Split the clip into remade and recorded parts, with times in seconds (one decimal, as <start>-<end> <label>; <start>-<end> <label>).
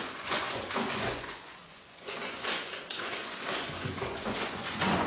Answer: 0.0-5.1 remade